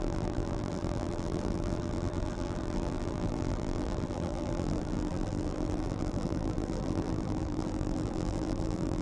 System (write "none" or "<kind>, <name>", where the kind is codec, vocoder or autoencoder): vocoder, BigVGAN v2